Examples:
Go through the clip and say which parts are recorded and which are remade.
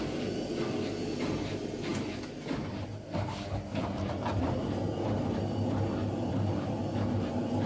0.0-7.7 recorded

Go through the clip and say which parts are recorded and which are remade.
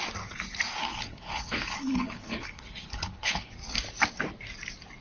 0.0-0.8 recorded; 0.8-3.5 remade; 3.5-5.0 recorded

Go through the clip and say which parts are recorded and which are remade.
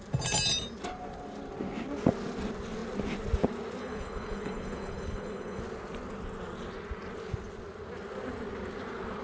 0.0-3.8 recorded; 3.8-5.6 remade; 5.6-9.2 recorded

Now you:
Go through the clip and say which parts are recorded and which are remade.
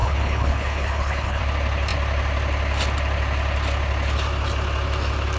0.0-1.4 remade; 1.4-5.4 recorded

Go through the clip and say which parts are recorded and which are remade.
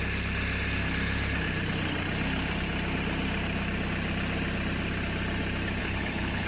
0.0-5.8 recorded; 5.8-6.5 remade